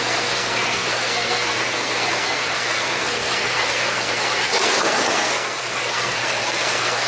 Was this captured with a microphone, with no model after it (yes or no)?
no